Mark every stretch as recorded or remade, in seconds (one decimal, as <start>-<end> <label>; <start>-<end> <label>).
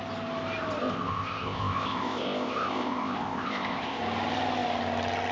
0.0-0.8 recorded; 0.8-4.0 remade; 4.0-5.3 recorded